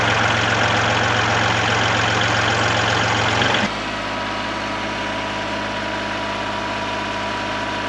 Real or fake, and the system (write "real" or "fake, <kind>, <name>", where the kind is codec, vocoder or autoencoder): real